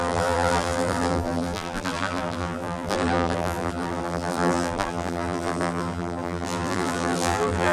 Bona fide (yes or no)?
no